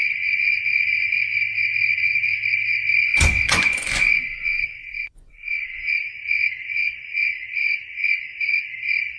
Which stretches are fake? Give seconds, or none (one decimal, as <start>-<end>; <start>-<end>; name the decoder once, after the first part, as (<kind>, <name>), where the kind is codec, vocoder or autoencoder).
0.0-1.1 (vocoder, Vocos); 1.9-2.4; 3.1-8.2